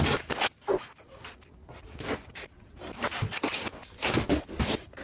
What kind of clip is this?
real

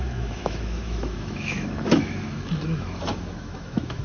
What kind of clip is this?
fake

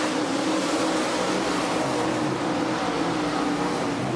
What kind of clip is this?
real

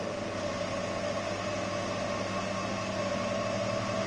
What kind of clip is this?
real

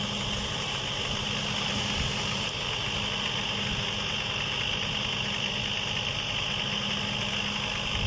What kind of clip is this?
real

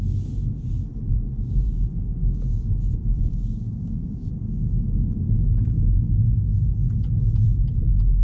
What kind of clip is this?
real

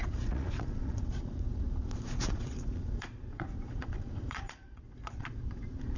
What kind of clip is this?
fake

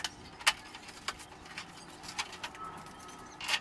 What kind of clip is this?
real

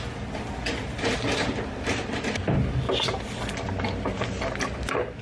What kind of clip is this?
real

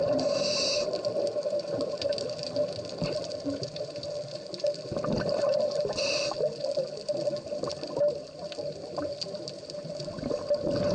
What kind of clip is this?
real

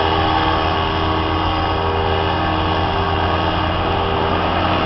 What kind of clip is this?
real